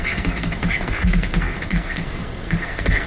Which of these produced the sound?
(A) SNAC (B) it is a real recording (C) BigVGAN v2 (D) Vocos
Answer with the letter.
A